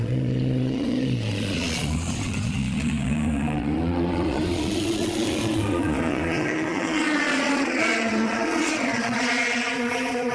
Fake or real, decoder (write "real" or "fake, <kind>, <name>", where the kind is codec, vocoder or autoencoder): fake, vocoder, Vocos